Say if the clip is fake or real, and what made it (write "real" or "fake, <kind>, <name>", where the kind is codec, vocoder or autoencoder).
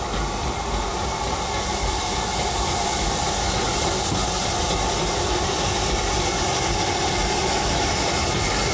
real